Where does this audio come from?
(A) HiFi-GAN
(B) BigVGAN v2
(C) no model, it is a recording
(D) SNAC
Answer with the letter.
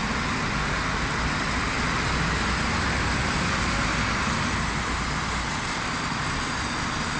C